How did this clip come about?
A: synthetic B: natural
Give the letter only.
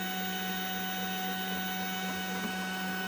B